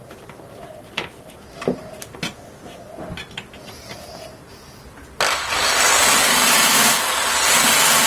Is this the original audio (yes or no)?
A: yes